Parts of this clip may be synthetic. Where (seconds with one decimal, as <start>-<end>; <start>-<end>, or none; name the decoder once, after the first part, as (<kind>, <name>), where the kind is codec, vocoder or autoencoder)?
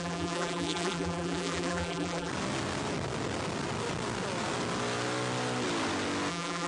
0.0-2.3 (vocoder, BigVGAN v2); 6.3-6.7